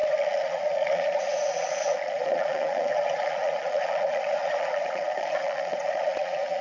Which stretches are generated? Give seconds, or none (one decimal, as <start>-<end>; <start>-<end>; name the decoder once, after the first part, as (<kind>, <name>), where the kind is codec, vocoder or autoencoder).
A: 0.0-6.6 (vocoder, Vocos)